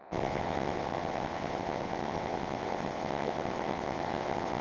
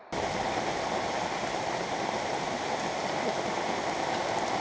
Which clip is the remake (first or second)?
first